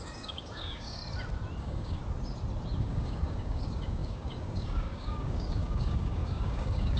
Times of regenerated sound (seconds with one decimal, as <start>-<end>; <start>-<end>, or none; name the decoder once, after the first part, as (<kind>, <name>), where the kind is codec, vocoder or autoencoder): 0.0-1.0 (codec, DAC); 1.6-2.0; 2.8-7.0